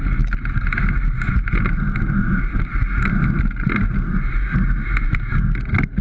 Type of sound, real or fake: real